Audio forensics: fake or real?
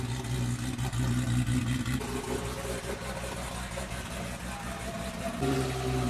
real